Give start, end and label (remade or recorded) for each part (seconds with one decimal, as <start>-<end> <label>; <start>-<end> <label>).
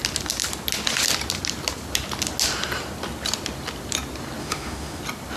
0.0-4.4 recorded; 4.4-5.0 remade; 5.0-5.4 recorded